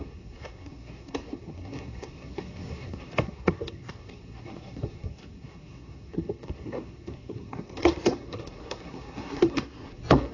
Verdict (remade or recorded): remade